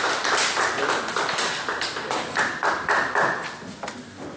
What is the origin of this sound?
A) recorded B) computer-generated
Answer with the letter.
A